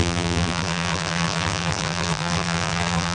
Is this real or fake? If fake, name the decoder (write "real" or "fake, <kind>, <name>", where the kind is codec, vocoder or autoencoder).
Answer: fake, vocoder, BigVGAN v2